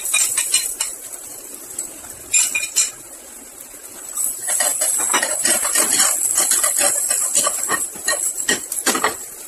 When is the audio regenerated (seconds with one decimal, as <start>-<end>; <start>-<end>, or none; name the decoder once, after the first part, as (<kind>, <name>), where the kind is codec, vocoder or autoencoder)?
none